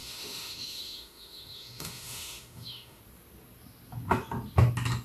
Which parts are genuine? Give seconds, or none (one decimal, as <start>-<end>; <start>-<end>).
3.0-5.0

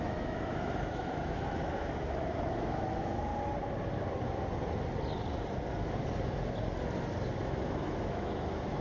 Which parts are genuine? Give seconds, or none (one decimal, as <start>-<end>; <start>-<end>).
3.3-7.3